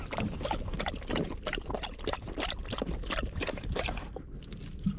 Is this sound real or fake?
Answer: real